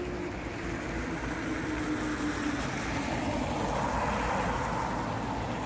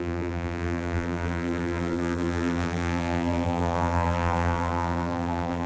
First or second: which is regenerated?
second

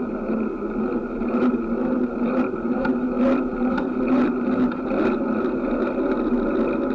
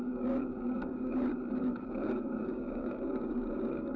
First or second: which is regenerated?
second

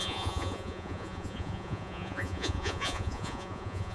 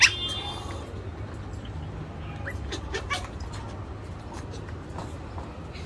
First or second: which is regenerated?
first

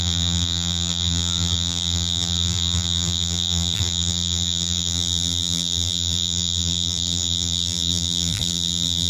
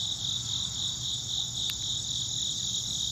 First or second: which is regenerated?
first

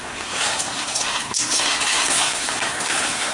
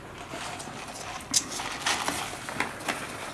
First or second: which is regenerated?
first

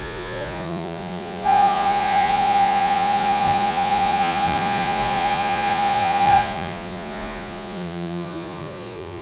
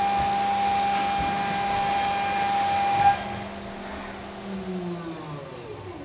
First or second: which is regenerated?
first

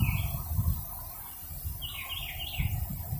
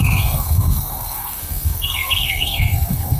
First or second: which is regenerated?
second